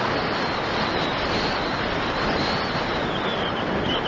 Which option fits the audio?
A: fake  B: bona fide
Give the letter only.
B